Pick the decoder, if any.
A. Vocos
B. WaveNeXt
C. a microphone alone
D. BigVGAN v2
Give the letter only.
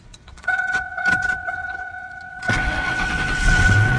B